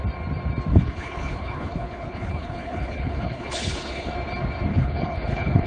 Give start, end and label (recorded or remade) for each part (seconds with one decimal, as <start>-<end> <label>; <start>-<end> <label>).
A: 0.0-0.7 recorded; 0.7-4.1 remade; 4.1-4.7 recorded; 4.7-5.7 remade